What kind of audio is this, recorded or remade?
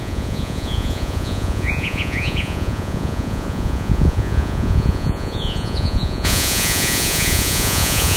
remade